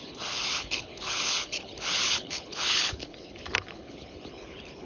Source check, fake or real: fake